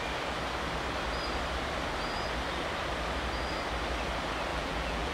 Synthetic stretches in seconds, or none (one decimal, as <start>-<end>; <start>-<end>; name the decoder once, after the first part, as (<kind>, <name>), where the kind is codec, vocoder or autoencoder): 4.5-5.1 (vocoder, BigVGAN v2)